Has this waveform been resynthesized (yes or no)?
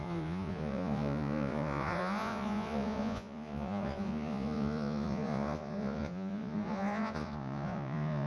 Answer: yes